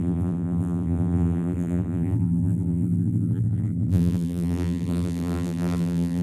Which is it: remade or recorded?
remade